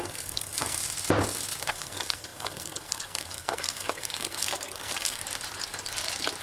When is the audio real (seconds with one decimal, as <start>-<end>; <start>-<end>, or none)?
0.8-1.7; 5.2-6.4